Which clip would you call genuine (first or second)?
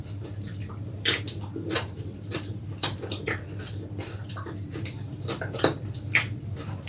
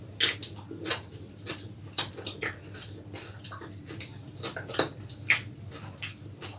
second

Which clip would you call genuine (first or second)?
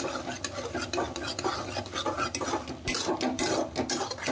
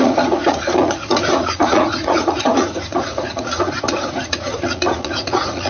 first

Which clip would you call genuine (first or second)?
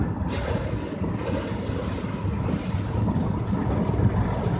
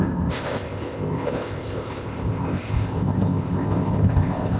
first